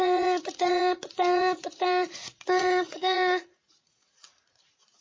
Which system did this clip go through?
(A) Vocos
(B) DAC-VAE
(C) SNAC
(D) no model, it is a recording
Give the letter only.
A